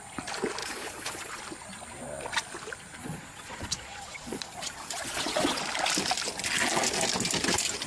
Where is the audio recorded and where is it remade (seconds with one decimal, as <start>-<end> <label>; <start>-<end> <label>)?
0.0-0.6 recorded; 0.6-1.4 remade; 1.4-3.0 recorded; 3.0-5.6 remade; 5.6-7.9 recorded